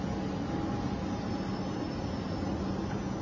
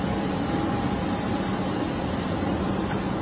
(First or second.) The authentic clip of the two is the first